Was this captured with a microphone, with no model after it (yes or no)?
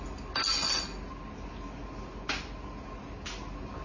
yes